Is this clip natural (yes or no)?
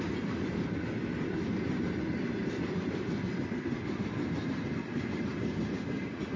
yes